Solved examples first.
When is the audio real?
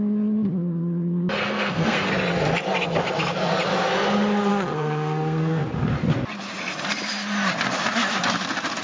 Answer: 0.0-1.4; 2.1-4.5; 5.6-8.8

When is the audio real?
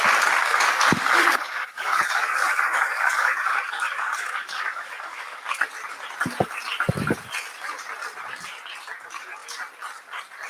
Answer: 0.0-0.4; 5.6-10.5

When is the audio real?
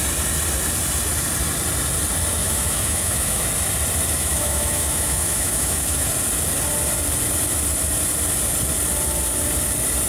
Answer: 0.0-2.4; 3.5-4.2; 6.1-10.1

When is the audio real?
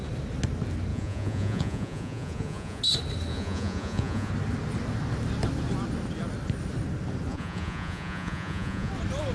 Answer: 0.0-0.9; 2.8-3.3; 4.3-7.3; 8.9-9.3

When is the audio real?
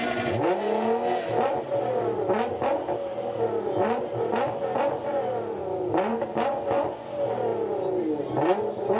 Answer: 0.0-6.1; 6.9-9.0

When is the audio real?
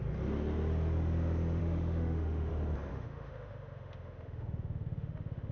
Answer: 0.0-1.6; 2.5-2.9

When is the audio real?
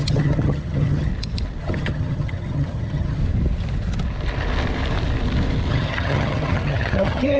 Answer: 1.1-1.6; 3.2-5.7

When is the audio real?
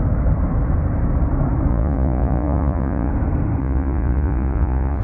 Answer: 0.0-1.7; 3.1-3.6